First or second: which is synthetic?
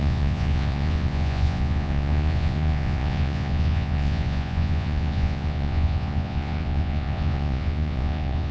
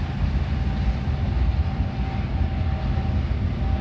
first